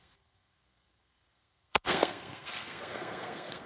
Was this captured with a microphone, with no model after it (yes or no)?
no